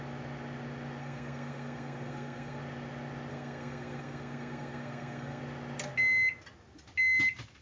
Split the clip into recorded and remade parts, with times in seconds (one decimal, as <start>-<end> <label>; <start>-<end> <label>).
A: 0.0-1.0 recorded; 1.0-2.6 remade; 2.6-3.3 recorded; 3.3-5.4 remade; 5.4-7.6 recorded